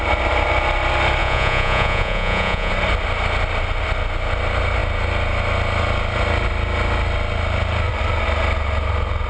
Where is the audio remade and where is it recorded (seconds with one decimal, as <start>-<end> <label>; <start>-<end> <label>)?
0.0-1.2 recorded; 1.2-2.7 remade; 2.7-9.3 recorded